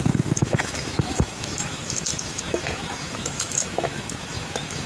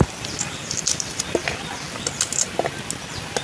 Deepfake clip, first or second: first